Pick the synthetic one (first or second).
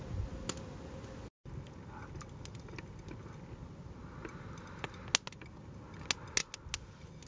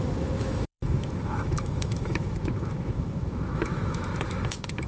second